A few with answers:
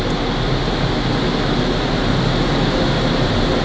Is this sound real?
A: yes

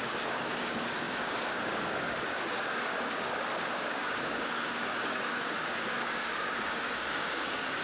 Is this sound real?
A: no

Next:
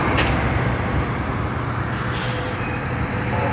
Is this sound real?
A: yes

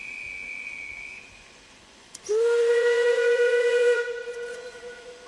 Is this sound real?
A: no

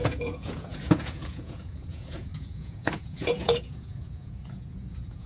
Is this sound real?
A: no